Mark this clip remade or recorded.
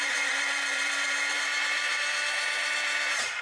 remade